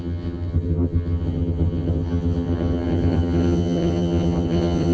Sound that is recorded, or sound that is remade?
remade